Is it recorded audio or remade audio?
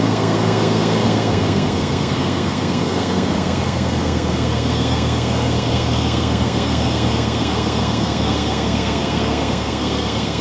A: remade